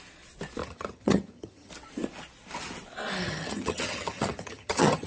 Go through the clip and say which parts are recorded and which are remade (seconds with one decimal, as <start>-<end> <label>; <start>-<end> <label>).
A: 0.0-0.6 recorded; 0.6-1.7 remade; 1.7-3.2 recorded; 3.2-5.1 remade